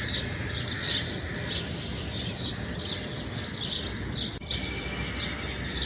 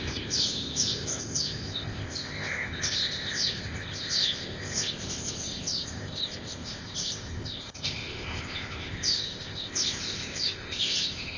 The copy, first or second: second